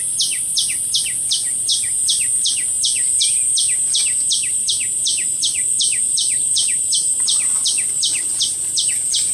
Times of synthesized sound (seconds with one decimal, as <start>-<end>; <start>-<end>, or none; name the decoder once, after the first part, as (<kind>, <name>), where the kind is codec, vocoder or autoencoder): 5.0-8.9 (vocoder, BigVGAN v2)